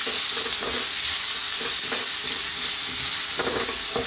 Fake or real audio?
real